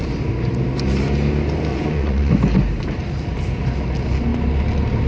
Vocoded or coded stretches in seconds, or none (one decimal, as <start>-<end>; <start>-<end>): 1.7-2.3